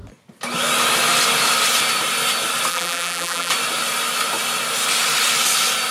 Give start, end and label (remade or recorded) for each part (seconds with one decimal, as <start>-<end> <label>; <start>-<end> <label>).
0.0-2.7 recorded; 2.7-3.5 remade; 3.5-5.9 recorded